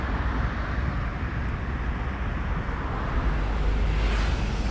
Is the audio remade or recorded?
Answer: recorded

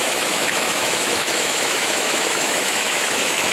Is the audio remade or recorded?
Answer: remade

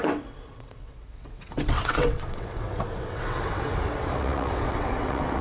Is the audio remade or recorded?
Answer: remade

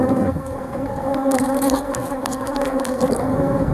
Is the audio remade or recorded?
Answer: remade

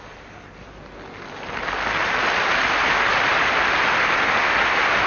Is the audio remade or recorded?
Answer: recorded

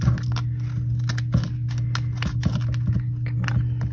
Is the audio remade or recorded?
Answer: recorded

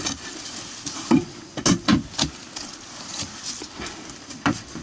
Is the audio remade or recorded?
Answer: recorded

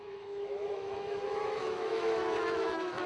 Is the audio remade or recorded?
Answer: remade